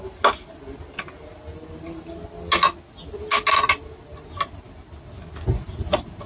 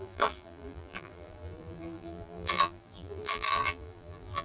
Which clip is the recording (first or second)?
first